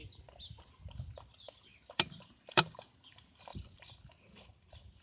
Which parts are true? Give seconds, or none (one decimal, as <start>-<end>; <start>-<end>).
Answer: 0.0-1.7; 2.9-3.5; 4.0-5.0